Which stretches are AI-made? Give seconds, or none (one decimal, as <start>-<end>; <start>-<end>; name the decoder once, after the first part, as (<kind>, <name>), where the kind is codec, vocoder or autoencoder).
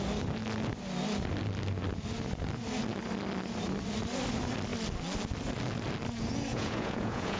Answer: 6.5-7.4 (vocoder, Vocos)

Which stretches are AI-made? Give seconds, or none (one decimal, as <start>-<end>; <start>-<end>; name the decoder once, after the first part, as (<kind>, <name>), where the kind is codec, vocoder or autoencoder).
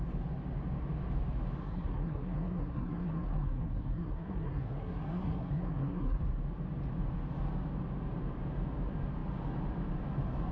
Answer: 1.6-6.2 (codec, SNAC)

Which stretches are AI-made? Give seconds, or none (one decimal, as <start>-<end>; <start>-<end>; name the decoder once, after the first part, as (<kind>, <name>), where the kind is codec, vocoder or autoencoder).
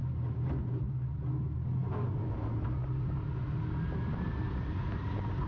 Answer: none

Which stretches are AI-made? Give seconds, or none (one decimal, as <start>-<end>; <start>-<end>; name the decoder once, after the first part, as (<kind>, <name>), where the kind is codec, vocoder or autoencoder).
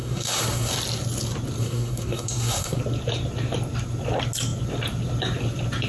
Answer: 0.0-0.7 (codec, SNAC); 1.6-2.8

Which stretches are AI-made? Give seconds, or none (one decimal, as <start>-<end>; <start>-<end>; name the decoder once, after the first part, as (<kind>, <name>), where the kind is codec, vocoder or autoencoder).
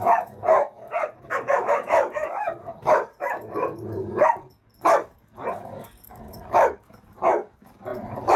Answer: 0.0-8.4 (codec, DAC)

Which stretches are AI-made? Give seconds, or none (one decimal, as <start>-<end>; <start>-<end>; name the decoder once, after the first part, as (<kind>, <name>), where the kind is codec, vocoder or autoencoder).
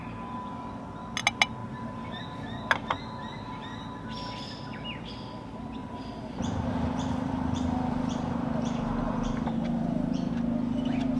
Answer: 1.6-2.2 (vocoder, BigVGAN v2); 5.8-10.3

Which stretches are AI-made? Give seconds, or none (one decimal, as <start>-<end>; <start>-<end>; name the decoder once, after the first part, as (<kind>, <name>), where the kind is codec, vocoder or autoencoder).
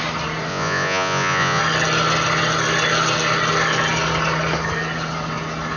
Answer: 0.5-1.6 (vocoder, Vocos)